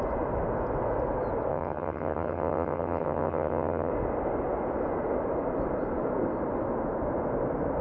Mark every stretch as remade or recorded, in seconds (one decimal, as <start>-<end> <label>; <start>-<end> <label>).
0.0-1.5 recorded; 1.5-3.9 remade; 3.9-7.8 recorded